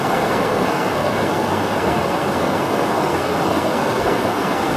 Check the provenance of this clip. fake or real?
fake